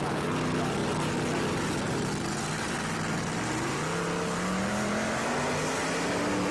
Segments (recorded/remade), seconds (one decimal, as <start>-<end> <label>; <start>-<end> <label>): 0.0-6.5 recorded